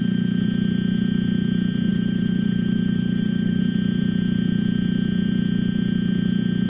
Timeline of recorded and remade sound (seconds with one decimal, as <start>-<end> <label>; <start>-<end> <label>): 0.0-1.9 recorded; 1.9-3.6 remade; 3.6-6.7 recorded